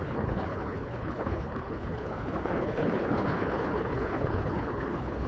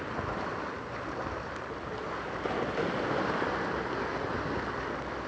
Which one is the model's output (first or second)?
first